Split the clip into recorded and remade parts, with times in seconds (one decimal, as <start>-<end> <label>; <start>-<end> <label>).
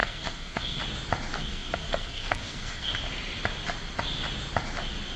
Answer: 0.0-0.8 remade; 0.8-1.3 recorded; 1.3-2.9 remade; 2.9-5.2 recorded